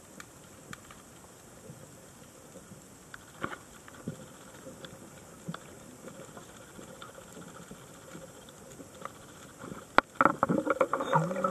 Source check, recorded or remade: recorded